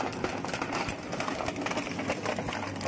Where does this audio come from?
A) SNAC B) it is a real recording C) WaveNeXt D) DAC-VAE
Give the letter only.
B